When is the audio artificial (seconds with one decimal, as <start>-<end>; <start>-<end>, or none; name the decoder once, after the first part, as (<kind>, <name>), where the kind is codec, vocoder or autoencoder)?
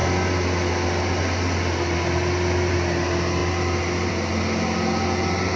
none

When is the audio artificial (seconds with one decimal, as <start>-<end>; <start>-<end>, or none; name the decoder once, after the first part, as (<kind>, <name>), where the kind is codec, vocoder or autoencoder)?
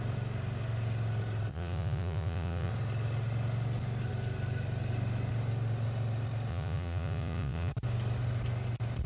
1.5-2.7 (vocoder, Vocos); 6.5-7.7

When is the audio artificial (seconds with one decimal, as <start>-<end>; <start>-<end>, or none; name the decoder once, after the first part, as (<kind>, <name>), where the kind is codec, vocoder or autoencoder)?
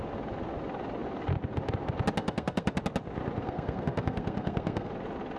2.2-2.8 (codec, SNAC); 3.4-4.9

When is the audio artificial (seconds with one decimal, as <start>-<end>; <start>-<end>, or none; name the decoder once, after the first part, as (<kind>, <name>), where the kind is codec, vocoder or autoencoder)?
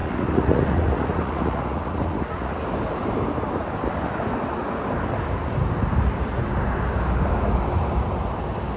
0.0-2.6 (vocoder, Vocos)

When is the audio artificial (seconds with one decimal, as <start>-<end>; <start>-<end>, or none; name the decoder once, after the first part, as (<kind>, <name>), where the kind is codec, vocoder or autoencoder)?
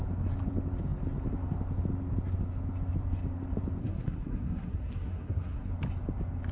3.8-5.7 (codec, SNAC)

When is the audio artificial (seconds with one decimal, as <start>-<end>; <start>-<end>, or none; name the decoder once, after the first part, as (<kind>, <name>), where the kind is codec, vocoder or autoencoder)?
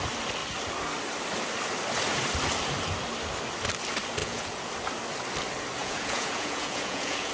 4.2-4.7 (vocoder, Vocos); 5.8-7.3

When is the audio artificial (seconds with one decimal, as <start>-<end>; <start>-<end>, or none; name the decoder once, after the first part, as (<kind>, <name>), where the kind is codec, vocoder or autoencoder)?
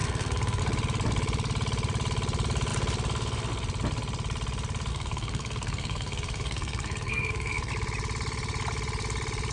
0.0-0.6 (codec, SNAC); 4.9-7.7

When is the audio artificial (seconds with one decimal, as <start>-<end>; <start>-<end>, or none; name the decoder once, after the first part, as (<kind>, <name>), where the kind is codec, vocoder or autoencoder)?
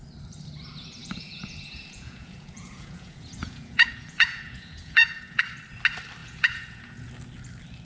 1.0-5.4 (vocoder, Vocos); 6.2-7.1